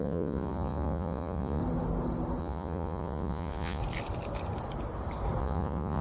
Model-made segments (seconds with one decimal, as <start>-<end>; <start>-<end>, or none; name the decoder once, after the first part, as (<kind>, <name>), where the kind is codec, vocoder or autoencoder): 0.0-1.6 (vocoder, Vocos); 2.4-3.8; 5.4-6.0